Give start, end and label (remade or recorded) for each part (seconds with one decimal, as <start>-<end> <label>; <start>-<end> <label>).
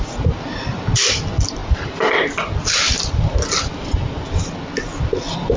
0.0-5.6 recorded